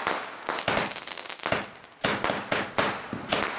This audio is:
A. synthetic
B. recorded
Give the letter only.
B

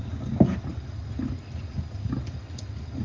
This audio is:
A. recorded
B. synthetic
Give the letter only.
A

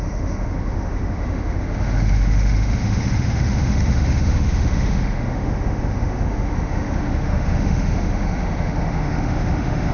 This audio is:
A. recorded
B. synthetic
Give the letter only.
B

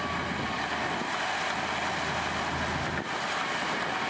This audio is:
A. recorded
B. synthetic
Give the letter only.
A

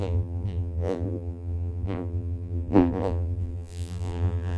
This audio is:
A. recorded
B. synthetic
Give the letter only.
B